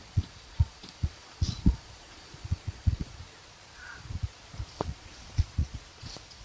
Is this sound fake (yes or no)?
yes